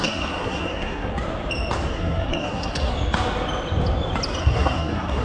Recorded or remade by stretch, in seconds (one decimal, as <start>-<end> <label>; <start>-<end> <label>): 0.0-1.1 remade; 1.1-1.9 recorded; 1.9-2.9 remade; 2.9-4.4 recorded; 4.4-5.2 remade